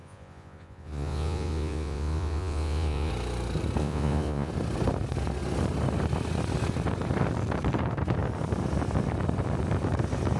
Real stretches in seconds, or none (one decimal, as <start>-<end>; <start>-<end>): 3.1-3.8; 4.5-10.4